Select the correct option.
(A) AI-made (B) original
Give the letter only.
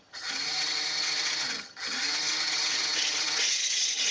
A